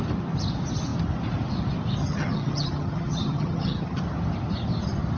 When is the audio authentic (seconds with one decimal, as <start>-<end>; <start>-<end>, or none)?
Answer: 0.0-2.0; 4.0-5.2